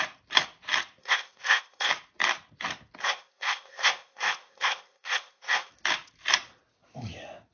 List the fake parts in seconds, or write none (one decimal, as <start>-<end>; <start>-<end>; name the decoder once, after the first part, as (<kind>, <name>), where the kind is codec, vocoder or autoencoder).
1.0-1.9 (codec, ZipCodec); 3.0-5.7